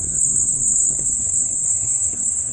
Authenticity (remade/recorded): remade